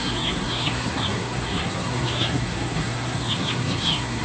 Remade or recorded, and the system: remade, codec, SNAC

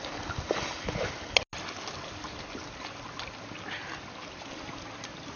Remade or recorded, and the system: recorded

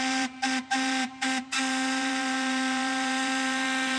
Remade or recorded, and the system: remade, vocoder, BigVGAN v2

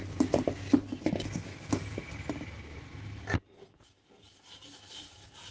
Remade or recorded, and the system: recorded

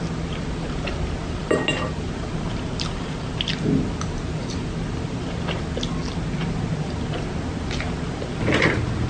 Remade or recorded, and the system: recorded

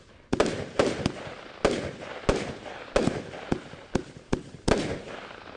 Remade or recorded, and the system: recorded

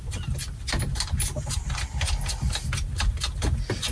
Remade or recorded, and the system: recorded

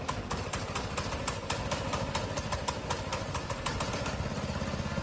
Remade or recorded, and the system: recorded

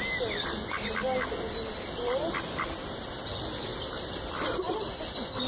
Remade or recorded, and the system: recorded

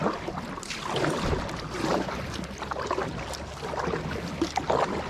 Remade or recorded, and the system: recorded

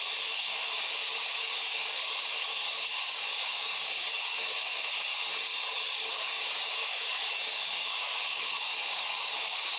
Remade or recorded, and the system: remade, codec, DAC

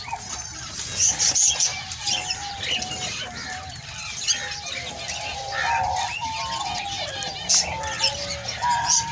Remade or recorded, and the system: recorded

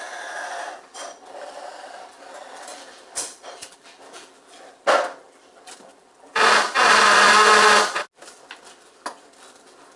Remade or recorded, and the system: recorded